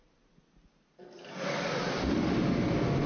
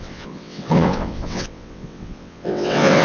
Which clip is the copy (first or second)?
second